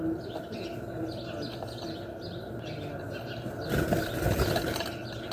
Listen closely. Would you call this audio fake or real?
real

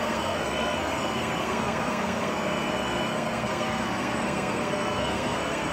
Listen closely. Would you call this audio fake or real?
fake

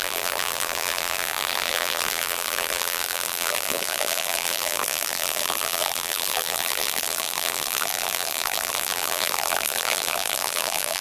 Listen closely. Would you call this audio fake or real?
fake